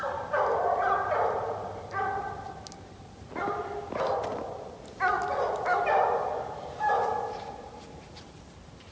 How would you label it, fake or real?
real